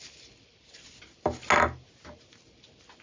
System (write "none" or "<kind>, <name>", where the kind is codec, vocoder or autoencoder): none